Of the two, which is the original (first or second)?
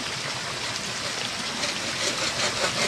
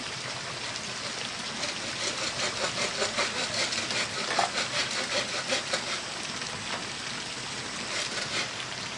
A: second